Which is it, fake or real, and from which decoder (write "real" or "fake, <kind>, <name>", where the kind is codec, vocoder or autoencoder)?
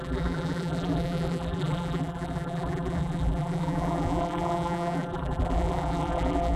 fake, vocoder, BigVGAN v2